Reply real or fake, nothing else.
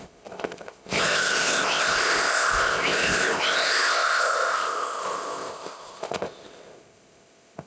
fake